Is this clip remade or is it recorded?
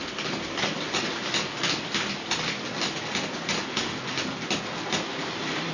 recorded